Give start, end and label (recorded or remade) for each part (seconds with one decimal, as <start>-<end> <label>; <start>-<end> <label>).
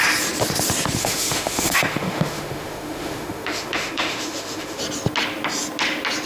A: 0.0-1.0 recorded; 1.0-4.8 remade; 4.8-6.3 recorded